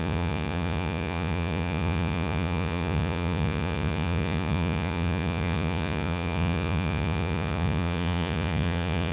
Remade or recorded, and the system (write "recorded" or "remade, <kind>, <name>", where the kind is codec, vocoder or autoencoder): remade, vocoder, Vocos